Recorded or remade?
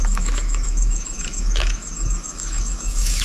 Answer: remade